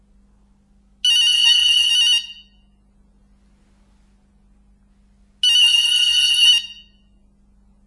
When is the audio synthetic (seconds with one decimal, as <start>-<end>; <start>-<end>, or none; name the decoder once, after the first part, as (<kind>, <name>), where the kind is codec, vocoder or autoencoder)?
1.3-1.9 (codec, SNAC); 5.6-6.5